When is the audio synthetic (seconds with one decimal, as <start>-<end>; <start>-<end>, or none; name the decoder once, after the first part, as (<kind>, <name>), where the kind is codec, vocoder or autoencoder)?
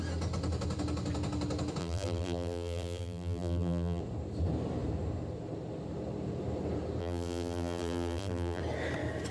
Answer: 1.8-4.0 (vocoder, BigVGAN v2); 7.0-8.6